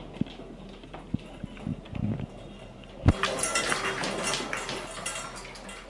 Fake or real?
real